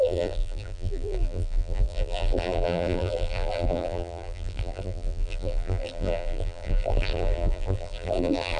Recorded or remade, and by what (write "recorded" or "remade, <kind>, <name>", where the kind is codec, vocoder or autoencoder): remade, vocoder, BigVGAN v2